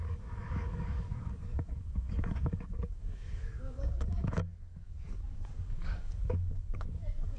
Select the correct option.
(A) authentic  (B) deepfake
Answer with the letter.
B